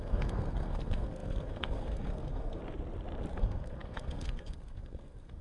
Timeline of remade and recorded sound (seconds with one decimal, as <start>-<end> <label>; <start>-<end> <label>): 0.0-2.6 remade; 2.6-3.3 recorded; 3.3-5.4 remade